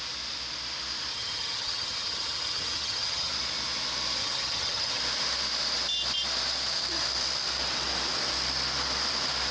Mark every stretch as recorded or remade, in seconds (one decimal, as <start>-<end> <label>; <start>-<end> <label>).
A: 0.0-1.1 recorded; 1.1-3.3 remade; 3.3-4.2 recorded; 4.2-5.0 remade; 5.0-9.5 recorded